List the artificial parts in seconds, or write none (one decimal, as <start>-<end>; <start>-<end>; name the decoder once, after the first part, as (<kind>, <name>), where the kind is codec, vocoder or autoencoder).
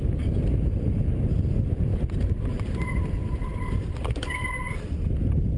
1.9-3.0 (vocoder, BigVGAN v2)